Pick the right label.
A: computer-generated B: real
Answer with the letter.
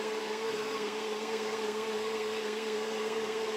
A